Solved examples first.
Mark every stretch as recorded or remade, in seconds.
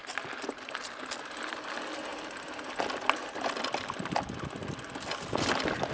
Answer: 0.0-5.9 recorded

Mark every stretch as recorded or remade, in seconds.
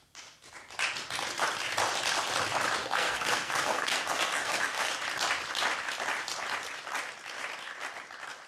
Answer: 0.0-2.8 recorded; 2.8-4.9 remade; 4.9-8.5 recorded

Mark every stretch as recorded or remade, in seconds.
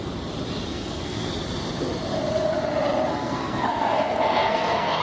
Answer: 0.0-0.7 recorded; 0.7-1.3 remade; 1.3-3.1 recorded; 3.1-5.0 remade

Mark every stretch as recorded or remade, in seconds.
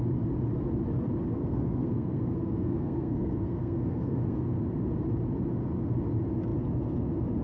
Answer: 0.0-1.4 recorded; 1.4-4.6 remade; 4.6-7.4 recorded